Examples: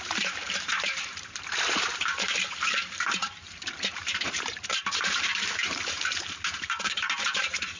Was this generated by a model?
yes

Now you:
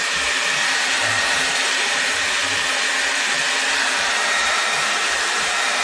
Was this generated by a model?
yes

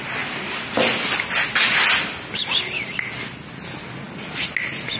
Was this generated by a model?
no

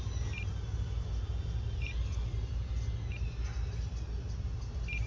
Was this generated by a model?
no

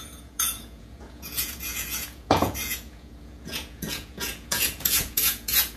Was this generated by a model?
yes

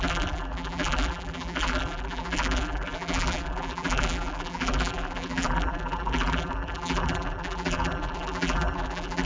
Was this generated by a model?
yes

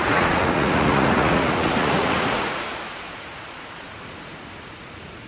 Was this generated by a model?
yes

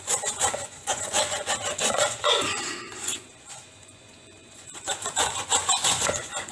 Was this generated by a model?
yes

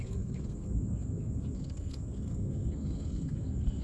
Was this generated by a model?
yes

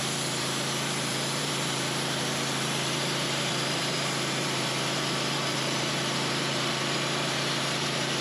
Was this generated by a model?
yes